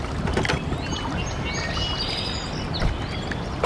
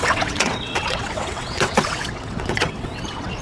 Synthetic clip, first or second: second